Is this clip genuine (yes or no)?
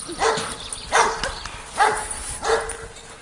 yes